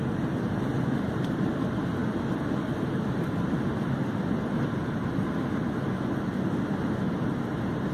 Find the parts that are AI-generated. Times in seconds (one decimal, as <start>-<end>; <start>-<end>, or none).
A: none